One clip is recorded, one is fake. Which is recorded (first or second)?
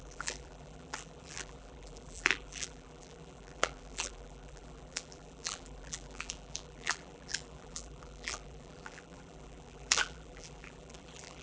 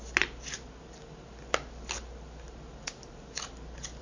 second